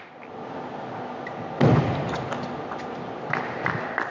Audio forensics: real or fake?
real